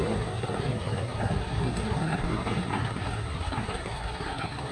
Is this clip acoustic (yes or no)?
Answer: no